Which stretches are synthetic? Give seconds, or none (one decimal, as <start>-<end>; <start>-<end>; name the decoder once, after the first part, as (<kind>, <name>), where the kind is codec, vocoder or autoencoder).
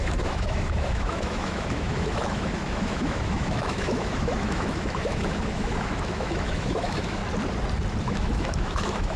0.0-7.2 (autoencoder, DAC-VAE); 8.0-9.2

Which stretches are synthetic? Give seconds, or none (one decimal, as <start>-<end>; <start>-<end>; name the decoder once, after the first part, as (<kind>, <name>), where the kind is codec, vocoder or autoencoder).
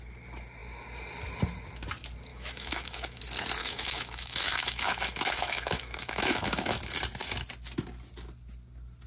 2.3-3.2 (autoencoder, DAC-VAE); 3.6-6.8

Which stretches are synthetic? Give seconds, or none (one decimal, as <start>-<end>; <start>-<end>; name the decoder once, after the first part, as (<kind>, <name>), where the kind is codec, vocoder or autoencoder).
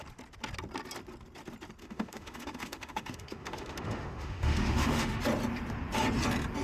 1.8-5.2 (autoencoder, DAC-VAE)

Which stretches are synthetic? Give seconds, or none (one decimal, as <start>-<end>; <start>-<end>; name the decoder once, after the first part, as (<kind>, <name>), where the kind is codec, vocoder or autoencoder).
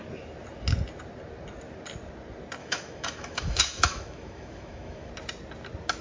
2.6-5.1 (autoencoder, DAC-VAE)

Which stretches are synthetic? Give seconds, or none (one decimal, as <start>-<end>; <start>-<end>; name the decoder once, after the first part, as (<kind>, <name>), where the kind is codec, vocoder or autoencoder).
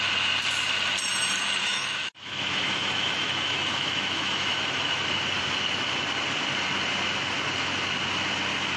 1.6-5.2 (autoencoder, DAC-VAE)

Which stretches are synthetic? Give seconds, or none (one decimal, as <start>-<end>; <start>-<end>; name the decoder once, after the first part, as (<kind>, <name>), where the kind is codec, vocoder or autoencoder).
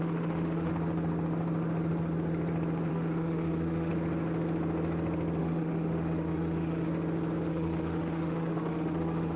0.0-0.7 (autoencoder, DAC-VAE); 2.9-3.9; 5.4-6.9; 7.5-9.4